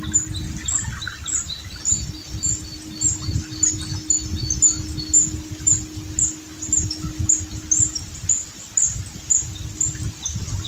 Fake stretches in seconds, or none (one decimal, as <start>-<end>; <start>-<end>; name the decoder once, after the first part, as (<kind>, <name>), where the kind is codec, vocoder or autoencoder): none